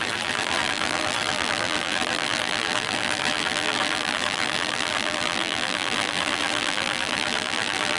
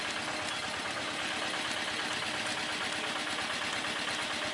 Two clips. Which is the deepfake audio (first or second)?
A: first